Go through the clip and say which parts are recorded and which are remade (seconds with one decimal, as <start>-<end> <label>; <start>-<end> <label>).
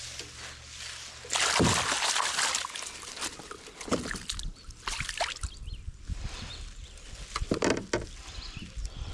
0.0-9.1 recorded